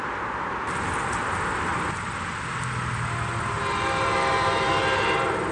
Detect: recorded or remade recorded